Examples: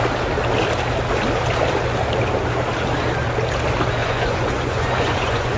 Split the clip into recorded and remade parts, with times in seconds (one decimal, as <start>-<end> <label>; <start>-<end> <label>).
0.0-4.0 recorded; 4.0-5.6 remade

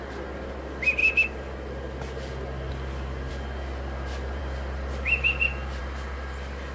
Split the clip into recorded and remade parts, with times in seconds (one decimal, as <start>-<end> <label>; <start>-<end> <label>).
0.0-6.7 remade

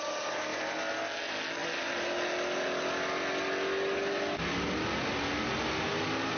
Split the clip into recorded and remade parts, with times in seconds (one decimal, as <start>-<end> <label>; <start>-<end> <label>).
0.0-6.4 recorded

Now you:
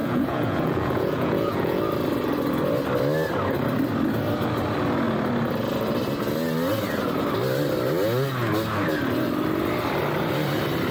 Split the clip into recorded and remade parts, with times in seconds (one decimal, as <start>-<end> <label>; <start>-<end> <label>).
0.0-1.8 remade; 1.8-10.9 recorded